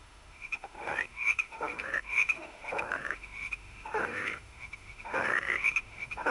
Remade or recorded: remade